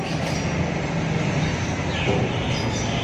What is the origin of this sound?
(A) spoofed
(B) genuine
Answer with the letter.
B